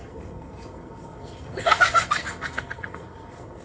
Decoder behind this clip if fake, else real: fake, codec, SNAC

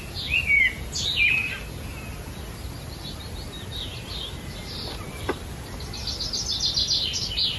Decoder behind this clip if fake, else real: real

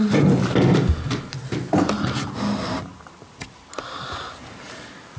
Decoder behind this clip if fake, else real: real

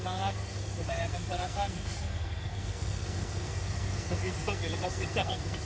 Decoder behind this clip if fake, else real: fake, codec, SNAC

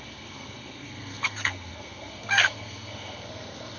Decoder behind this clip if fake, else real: fake, codec, SNAC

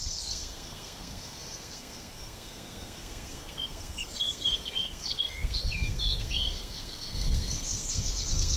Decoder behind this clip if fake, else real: fake, codec, SNAC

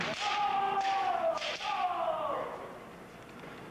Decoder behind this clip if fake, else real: real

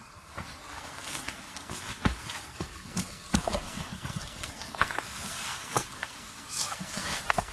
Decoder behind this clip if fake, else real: fake, codec, SNAC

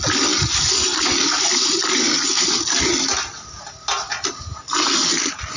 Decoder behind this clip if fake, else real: real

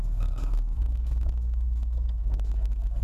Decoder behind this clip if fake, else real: fake, codec, SNAC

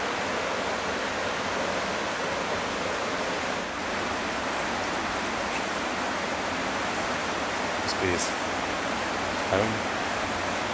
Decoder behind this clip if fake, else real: real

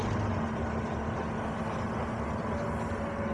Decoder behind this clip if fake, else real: real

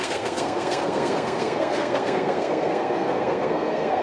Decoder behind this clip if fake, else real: fake, codec, SNAC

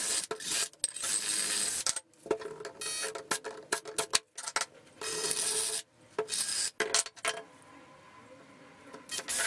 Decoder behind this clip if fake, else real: real